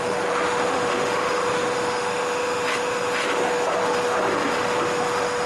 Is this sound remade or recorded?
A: remade